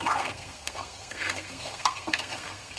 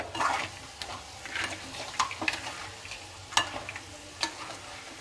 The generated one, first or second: first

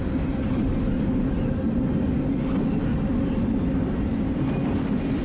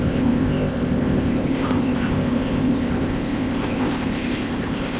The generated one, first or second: second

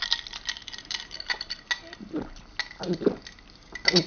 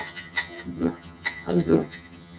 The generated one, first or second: second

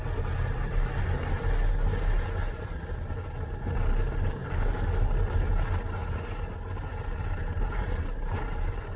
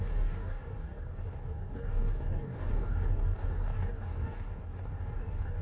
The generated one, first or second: second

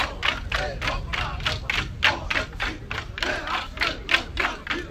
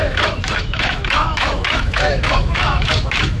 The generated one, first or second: second